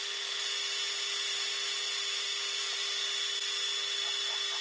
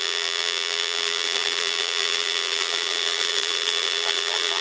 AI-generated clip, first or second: second